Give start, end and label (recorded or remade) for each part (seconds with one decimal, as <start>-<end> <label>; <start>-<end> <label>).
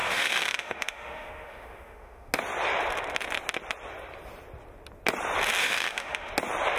0.0-2.3 remade; 2.3-5.6 recorded; 5.6-6.3 remade; 6.3-6.8 recorded